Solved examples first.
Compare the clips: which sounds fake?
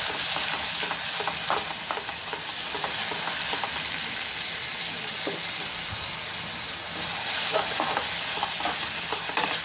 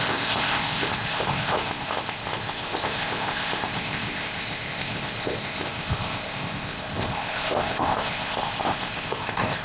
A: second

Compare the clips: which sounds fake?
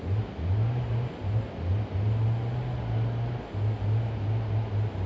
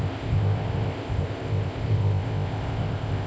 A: second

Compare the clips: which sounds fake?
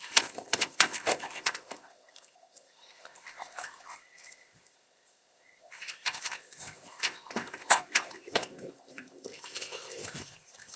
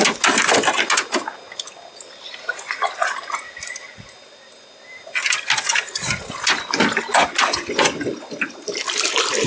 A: first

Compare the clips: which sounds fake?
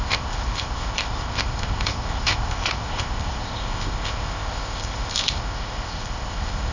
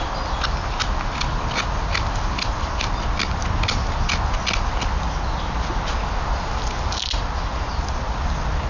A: first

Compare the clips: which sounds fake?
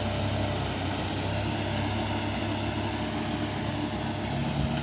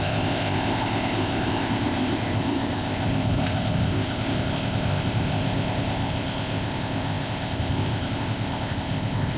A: second